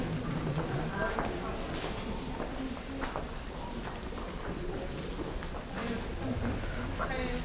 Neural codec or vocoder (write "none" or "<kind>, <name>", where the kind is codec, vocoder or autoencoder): none